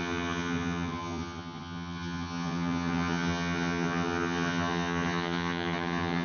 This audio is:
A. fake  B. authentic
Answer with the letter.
A